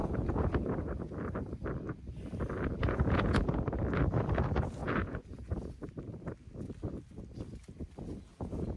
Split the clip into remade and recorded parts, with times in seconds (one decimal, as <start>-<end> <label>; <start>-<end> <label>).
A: 0.0-1.1 remade; 1.1-2.8 recorded; 2.8-3.8 remade; 3.8-4.8 recorded; 4.8-5.8 remade; 5.8-8.3 recorded; 8.3-8.8 remade